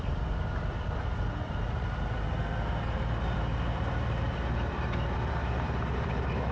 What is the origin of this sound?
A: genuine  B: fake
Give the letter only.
B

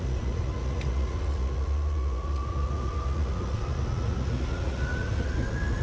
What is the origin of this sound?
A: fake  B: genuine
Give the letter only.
A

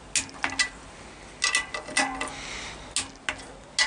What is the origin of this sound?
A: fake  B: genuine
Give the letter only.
B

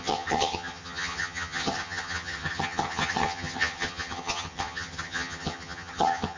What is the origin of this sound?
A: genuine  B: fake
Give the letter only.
B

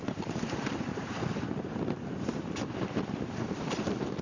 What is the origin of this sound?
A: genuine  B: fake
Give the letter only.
B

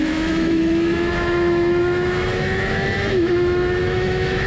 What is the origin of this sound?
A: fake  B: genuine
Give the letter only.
A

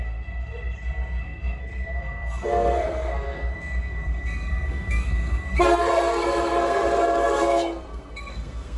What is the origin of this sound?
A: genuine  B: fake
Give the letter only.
B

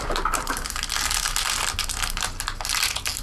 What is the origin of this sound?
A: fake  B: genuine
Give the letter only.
B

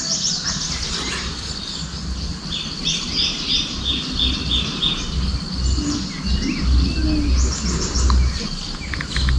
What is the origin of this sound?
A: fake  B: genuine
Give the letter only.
B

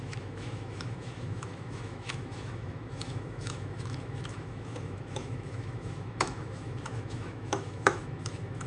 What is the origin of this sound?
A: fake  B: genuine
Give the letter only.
A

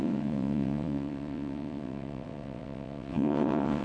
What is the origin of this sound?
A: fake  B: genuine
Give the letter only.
A